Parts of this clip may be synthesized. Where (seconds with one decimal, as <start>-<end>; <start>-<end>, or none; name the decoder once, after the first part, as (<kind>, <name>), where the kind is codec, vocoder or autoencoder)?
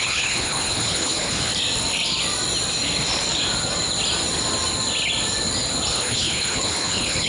0.0-1.5 (codec, HILCodec); 5.9-7.3